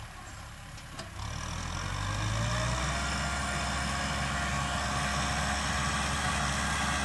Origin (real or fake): real